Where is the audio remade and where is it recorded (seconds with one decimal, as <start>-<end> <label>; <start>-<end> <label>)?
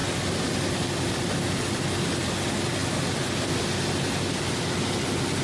0.0-5.4 recorded